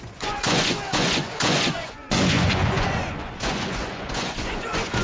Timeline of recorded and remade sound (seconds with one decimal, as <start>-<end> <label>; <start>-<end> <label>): 0.0-5.0 remade

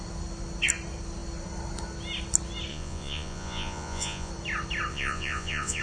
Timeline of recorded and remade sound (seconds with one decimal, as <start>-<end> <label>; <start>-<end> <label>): 0.0-2.7 recorded; 2.7-4.3 remade; 4.3-4.9 recorded; 4.9-5.8 remade

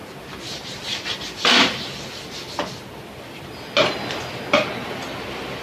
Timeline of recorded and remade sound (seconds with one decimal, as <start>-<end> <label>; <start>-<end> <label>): 0.0-5.6 recorded